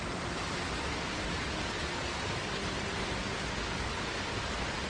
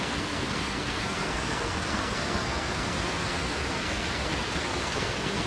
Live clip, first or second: first